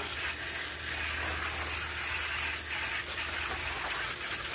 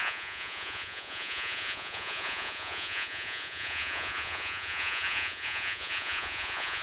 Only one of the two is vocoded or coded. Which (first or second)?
second